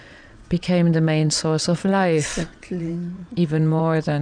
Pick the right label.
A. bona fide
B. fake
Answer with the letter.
B